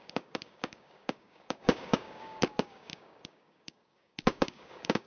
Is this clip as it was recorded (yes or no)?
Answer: no